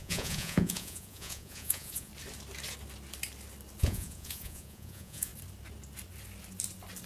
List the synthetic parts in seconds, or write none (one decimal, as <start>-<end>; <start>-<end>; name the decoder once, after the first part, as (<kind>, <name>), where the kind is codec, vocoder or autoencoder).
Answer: 0.0-2.1 (vocoder, Vocos); 3.8-5.3